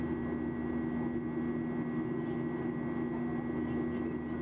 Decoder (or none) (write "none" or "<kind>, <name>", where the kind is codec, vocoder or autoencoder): none